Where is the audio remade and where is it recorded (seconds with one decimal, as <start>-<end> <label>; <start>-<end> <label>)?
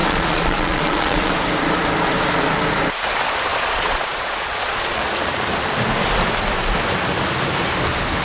0.0-1.3 remade; 1.3-3.5 recorded; 3.5-5.0 remade; 5.0-8.2 recorded